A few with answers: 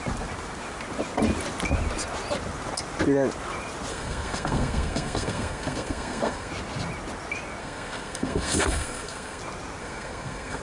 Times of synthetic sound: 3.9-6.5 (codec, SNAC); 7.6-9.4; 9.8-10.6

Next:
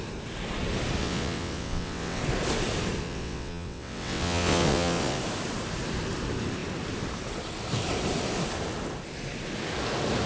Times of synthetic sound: 1.0-2.2 (vocoder, WaveNeXt); 3.0-5.2

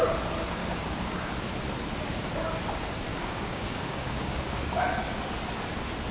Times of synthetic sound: 0.6-1.3 (codec, DAC); 3.1-4.8

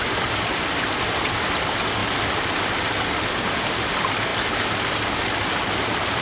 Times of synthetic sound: none

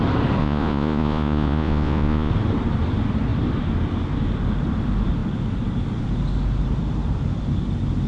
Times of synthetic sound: 0.4-2.3 (vocoder, Vocos)

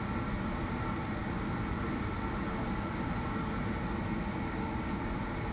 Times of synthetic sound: none